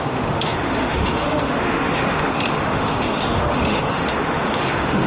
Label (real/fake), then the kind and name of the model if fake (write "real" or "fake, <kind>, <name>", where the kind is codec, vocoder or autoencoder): fake, autoencoder, DAC-VAE